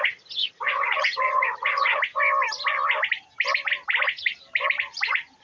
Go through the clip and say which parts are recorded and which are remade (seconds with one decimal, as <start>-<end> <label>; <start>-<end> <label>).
0.0-2.0 remade; 2.0-5.4 recorded